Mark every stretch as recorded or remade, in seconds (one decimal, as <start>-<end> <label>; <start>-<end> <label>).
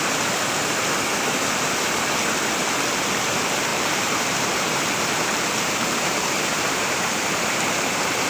0.0-3.7 recorded; 3.7-7.3 remade; 7.3-8.3 recorded